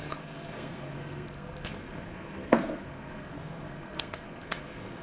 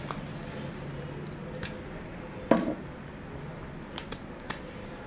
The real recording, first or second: second